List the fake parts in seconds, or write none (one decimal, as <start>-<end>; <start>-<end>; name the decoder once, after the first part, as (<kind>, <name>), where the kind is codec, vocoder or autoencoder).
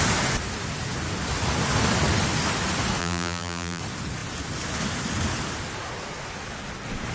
3.0-3.8 (vocoder, BigVGAN v2)